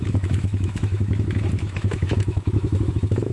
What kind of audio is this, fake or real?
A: fake